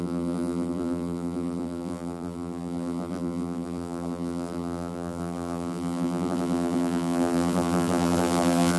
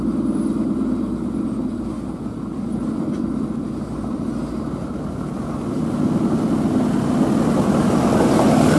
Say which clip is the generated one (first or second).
first